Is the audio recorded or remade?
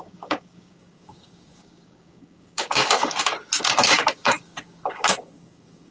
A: remade